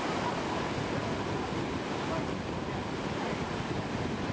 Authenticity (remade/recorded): recorded